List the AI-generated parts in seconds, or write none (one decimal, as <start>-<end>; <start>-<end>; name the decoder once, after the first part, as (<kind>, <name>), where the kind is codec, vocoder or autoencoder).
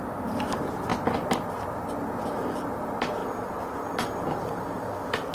none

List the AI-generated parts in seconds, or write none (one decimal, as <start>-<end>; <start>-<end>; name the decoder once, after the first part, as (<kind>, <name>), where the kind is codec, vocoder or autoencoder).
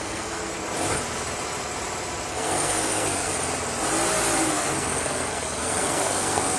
0.0-0.5 (codec, SNAC); 2.3-3.3; 4.5-6.6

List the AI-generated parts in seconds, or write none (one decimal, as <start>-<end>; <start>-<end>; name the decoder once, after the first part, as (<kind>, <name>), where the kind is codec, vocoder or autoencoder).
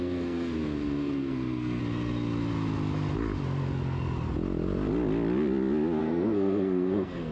0.0-1.8 (codec, SNAC); 6.0-7.3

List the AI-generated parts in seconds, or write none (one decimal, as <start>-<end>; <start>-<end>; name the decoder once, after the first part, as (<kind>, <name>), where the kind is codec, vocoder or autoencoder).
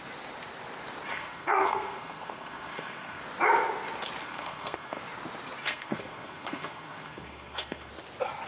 1.1-3.2 (codec, SNAC); 4.2-5.0; 5.6-7.9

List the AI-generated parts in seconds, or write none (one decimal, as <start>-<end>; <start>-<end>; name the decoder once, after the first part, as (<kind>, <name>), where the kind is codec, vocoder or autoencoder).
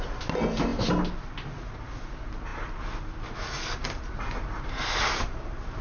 none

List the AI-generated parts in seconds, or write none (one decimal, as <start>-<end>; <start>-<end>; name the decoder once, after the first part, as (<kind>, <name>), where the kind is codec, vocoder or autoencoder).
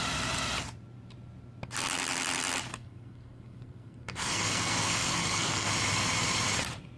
2.7-5.7 (codec, SNAC)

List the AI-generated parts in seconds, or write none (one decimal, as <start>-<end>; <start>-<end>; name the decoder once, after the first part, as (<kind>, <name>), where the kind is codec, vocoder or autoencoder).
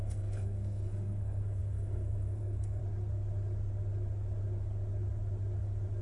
0.0-2.8 (codec, SNAC)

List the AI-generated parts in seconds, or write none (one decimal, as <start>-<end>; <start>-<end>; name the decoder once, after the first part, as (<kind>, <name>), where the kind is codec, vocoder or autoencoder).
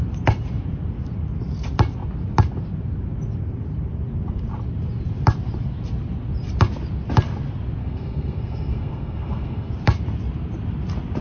7.8-9.7 (codec, SNAC)